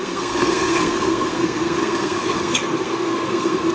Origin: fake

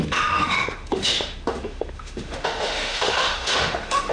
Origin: fake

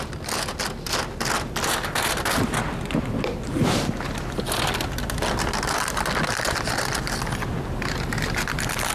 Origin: real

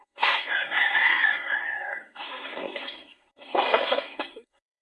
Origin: fake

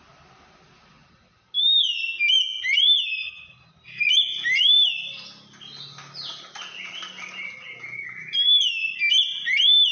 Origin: real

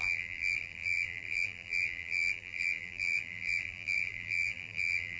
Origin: fake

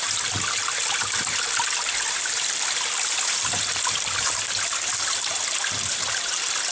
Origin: real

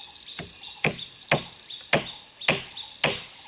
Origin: real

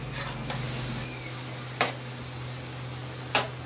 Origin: real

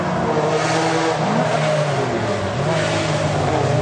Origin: real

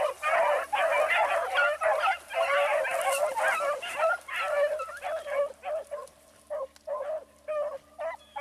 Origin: real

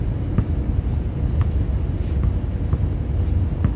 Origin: real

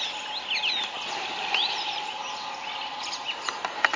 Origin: real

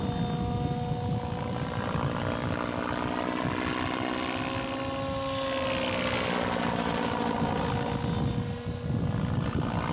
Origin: real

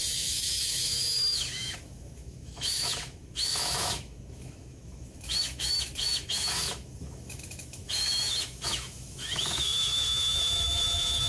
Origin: fake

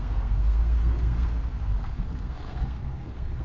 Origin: fake